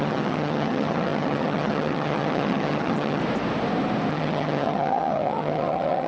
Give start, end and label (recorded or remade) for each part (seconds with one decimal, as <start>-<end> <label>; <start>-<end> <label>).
0.0-3.2 remade; 3.2-4.1 recorded; 4.1-6.1 remade